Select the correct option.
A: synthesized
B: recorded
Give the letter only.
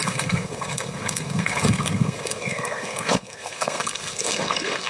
A